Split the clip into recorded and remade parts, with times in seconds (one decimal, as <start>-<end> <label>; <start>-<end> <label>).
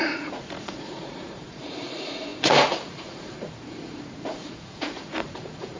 0.0-5.8 remade